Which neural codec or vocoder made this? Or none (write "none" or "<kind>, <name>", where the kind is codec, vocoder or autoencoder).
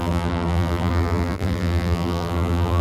vocoder, BigVGAN v2